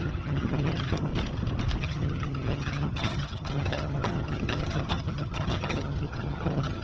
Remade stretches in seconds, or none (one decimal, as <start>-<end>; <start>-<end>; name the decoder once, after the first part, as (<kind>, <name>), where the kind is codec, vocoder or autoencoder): 0.0-1.1 (vocoder, HiFi-GAN); 1.8-6.8